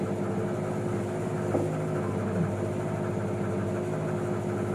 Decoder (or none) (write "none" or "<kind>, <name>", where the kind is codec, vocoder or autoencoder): none